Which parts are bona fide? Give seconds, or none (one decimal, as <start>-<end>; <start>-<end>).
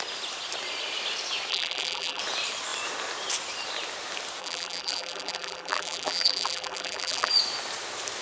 0.0-1.5; 2.2-4.4; 7.3-8.2